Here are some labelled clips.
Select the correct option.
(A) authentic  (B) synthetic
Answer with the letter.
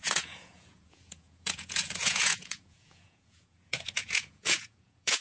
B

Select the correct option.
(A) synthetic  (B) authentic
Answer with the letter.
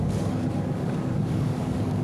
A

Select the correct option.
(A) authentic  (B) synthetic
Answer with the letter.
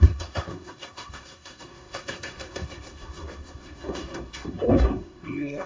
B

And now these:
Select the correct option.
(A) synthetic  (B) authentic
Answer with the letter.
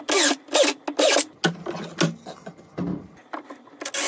B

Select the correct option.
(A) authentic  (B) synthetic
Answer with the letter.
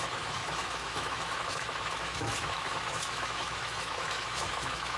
B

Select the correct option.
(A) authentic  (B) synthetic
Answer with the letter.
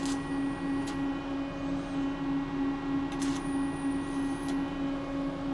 A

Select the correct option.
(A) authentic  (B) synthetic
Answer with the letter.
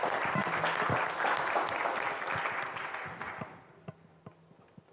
B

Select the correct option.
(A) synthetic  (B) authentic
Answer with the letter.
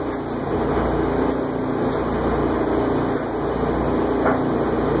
B